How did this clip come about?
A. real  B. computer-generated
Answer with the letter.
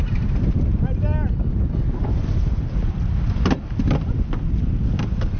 A